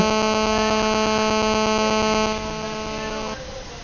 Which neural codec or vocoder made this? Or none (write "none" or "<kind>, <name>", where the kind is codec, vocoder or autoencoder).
none